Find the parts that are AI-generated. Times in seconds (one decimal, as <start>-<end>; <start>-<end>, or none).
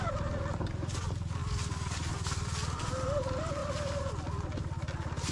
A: 1.4-3.1